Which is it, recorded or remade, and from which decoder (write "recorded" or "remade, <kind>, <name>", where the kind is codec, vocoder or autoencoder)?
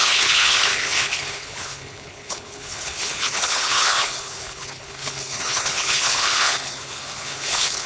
remade, codec, HILCodec